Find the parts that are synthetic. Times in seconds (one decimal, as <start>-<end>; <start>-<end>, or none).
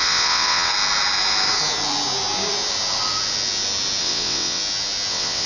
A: 0.0-0.7; 4.0-4.6; 5.1-5.5